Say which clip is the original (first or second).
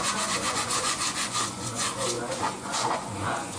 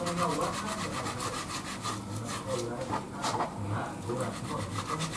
second